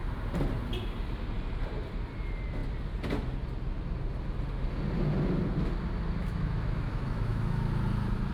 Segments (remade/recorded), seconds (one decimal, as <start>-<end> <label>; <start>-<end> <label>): 0.0-6.2 recorded; 6.2-7.7 remade; 7.7-8.3 recorded